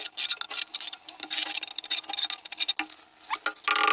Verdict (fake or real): real